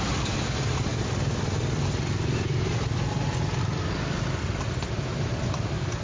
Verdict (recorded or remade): recorded